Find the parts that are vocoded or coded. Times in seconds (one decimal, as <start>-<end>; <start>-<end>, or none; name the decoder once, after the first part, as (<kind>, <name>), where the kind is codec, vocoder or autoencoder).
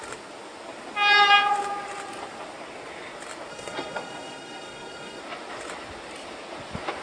3.5-5.2 (codec, SNAC)